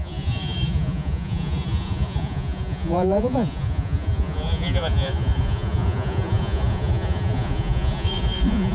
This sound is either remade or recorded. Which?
remade